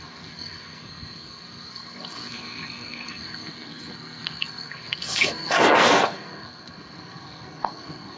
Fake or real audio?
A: fake